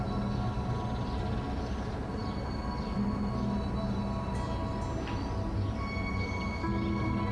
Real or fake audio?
real